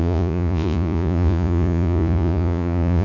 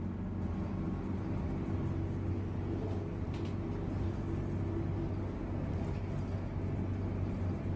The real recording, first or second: second